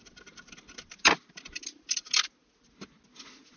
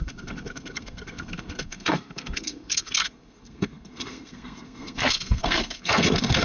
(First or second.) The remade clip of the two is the second